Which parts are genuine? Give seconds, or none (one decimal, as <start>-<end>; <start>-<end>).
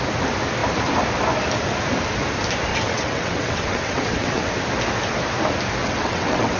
0.0-2.7; 4.5-5.8